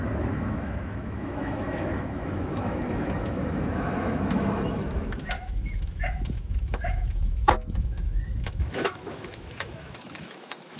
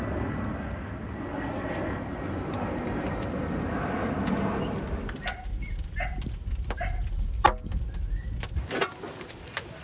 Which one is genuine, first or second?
second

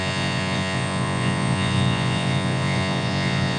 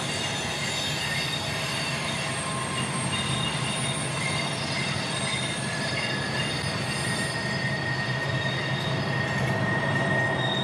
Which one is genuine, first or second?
second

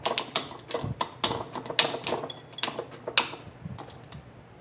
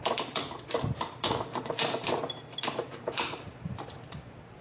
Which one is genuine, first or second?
first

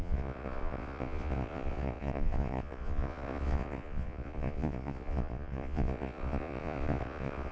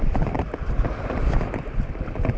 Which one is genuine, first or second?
second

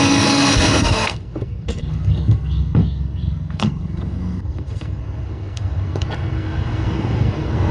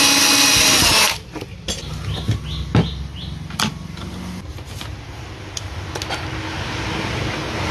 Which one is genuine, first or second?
second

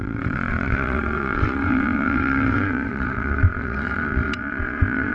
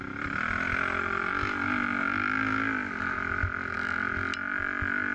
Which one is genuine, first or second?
second